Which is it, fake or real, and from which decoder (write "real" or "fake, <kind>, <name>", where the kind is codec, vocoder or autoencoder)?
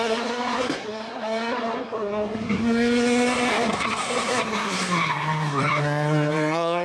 fake, codec, SNAC